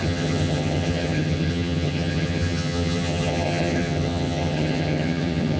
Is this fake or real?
fake